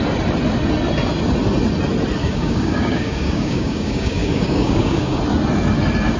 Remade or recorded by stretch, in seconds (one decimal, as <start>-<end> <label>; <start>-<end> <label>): 0.0-2.2 recorded; 2.2-5.2 remade; 5.2-6.2 recorded